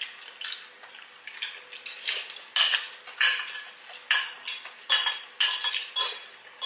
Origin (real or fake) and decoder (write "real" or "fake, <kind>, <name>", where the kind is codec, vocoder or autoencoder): real